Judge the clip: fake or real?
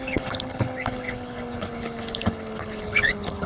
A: fake